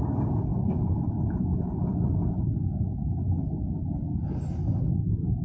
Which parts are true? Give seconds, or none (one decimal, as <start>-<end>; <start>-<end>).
0.0-5.4